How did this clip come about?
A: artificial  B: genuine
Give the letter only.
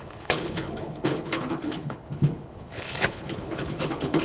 A